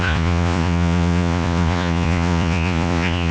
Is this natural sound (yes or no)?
no